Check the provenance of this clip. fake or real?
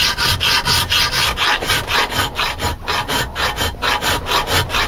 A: real